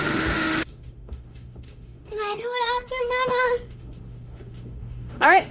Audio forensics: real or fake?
fake